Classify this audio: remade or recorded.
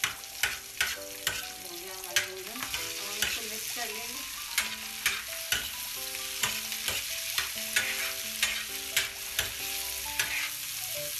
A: recorded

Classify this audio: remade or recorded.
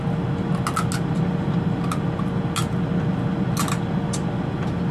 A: recorded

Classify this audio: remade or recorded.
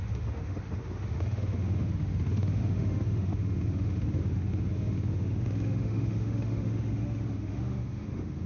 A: remade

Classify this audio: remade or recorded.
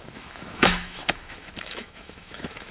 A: remade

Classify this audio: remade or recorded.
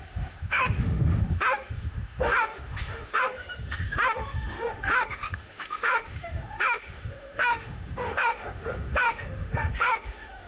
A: remade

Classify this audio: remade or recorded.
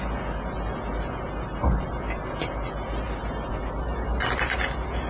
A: recorded